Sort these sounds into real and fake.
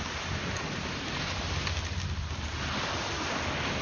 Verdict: real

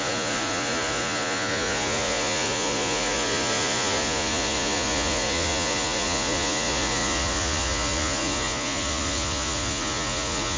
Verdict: fake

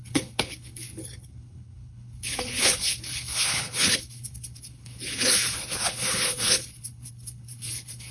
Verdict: fake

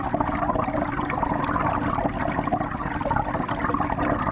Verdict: real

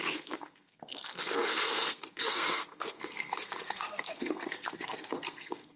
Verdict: fake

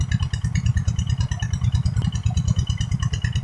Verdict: real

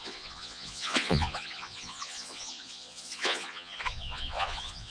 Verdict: fake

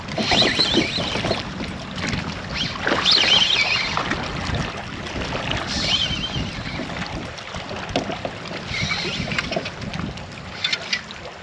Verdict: real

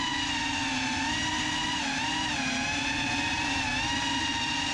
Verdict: real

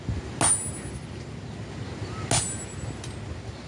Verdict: real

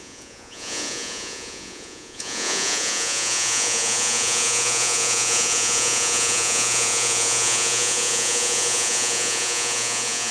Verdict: fake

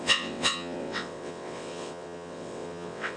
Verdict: fake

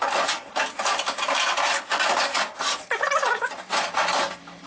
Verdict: real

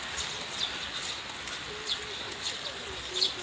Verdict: real